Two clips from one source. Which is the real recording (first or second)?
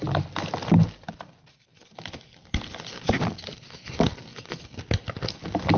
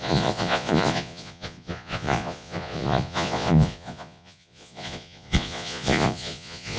first